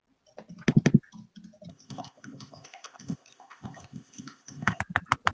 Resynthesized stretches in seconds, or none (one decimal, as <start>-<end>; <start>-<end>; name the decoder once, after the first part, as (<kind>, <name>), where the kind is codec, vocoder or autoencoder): 1.7-4.8 (codec, ZipCodec)